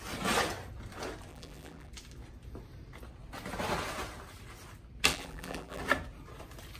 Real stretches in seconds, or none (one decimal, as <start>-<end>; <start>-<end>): 0.0-1.3; 1.9-5.1; 5.8-6.8